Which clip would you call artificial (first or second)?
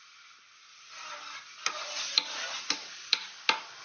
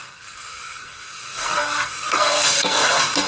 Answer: second